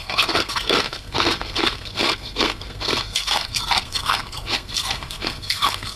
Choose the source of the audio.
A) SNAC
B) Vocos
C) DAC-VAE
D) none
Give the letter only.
A